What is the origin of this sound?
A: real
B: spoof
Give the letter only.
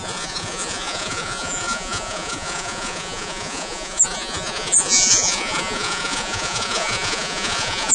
B